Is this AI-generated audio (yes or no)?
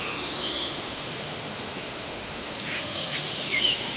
yes